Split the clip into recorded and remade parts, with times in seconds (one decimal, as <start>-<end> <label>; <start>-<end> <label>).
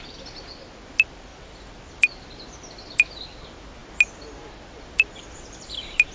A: 0.0-6.1 recorded